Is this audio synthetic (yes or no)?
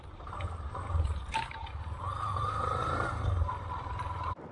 yes